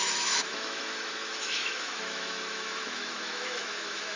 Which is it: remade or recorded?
remade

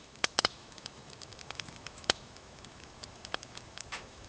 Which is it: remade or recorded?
remade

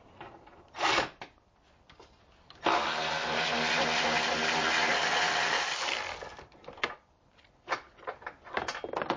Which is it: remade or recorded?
recorded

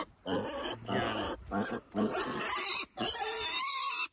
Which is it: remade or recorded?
recorded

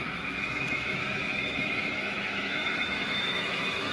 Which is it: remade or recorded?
remade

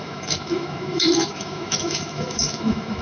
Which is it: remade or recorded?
remade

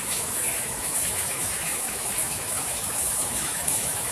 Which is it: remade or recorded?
remade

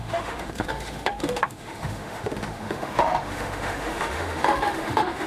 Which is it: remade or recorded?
remade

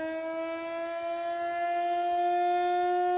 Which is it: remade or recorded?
recorded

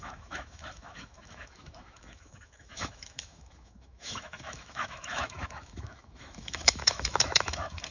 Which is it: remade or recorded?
remade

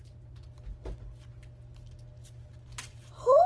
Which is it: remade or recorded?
recorded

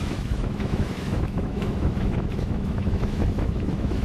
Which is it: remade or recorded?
remade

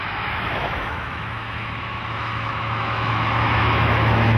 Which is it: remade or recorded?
remade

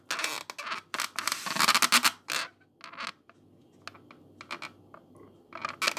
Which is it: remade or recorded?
recorded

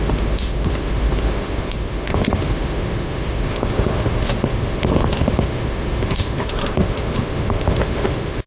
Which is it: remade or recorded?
remade